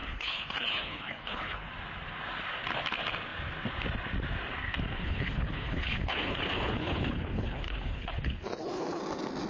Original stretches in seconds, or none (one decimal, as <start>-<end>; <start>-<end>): 1.7-5.0; 9.0-9.5